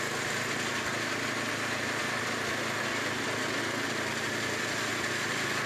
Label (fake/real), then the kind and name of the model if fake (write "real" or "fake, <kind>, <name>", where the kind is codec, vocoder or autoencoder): real